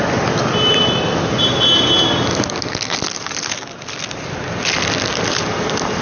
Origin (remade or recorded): recorded